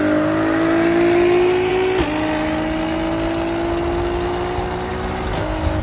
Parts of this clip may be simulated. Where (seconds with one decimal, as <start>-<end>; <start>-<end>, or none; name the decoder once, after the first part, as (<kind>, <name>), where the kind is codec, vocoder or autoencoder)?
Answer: none